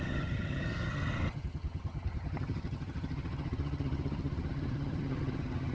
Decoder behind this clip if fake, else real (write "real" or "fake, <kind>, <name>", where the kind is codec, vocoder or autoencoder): fake, vocoder, HiFi-GAN